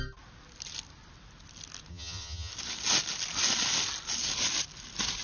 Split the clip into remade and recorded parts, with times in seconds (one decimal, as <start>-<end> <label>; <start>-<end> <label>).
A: 0.0-1.9 recorded; 1.9-2.5 remade; 2.5-5.2 recorded